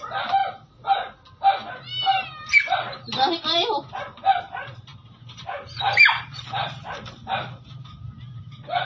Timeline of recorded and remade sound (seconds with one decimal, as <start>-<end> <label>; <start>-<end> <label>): 0.0-4.9 recorded; 4.9-8.4 remade; 8.4-8.8 recorded